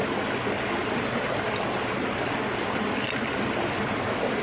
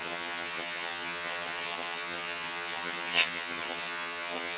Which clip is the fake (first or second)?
second